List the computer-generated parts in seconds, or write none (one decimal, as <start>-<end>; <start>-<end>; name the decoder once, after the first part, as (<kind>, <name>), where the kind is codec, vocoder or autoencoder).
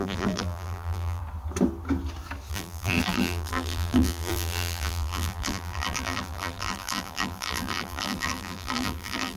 0.0-1.2 (vocoder, BigVGAN v2); 2.5-9.4